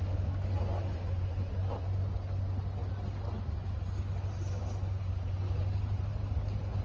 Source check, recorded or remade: recorded